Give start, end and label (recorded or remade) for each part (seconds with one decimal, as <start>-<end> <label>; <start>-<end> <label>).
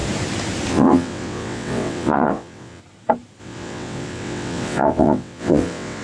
0.0-0.7 recorded; 0.7-2.8 remade; 2.8-3.4 recorded; 3.4-6.0 remade